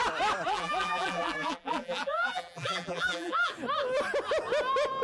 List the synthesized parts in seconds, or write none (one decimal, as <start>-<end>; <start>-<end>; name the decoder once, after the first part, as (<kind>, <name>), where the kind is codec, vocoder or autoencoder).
0.5-3.5 (vocoder, BigVGAN v2)